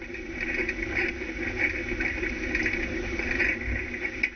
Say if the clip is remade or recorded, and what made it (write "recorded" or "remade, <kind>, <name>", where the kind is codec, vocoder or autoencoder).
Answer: recorded